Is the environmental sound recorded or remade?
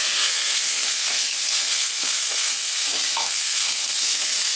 remade